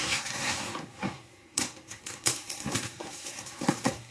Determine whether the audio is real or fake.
fake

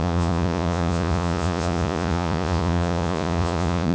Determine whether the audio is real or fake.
fake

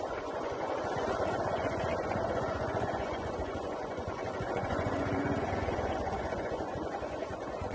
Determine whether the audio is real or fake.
fake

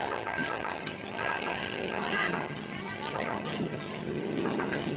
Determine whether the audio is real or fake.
fake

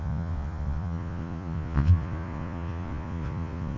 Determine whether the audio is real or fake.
fake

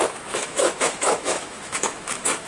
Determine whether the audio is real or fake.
fake